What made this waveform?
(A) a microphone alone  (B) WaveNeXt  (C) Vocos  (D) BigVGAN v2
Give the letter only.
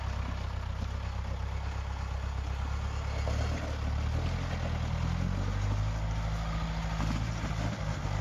A